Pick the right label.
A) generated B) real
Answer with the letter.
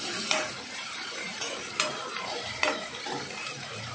A